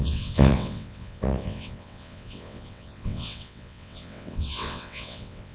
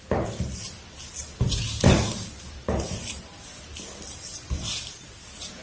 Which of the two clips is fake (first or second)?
first